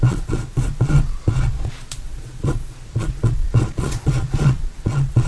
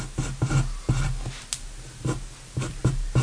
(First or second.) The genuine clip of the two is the second